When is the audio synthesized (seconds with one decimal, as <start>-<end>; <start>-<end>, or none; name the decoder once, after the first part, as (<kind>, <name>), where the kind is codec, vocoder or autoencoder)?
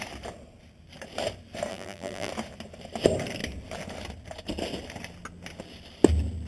1.7-2.3 (vocoder, BigVGAN v2)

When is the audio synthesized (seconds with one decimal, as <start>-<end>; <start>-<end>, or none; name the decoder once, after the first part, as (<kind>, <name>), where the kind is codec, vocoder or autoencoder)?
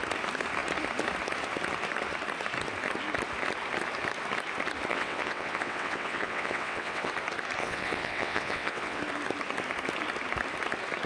4.9-7.1 (vocoder, WaveNeXt); 7.6-9.0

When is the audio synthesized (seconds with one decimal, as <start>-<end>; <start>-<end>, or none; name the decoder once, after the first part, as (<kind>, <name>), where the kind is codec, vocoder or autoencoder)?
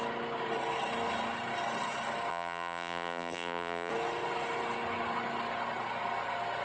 2.3-3.9 (vocoder, BigVGAN v2)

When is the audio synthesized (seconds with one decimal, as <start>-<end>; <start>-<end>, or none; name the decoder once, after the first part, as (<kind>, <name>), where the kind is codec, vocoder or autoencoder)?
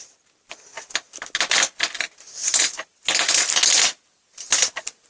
none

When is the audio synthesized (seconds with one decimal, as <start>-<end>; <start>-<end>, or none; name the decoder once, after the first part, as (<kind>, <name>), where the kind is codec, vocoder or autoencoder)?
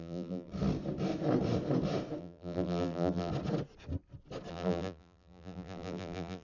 0.0-0.5 (vocoder, BigVGAN v2); 2.2-3.3; 4.5-6.4